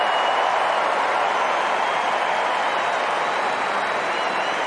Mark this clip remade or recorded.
recorded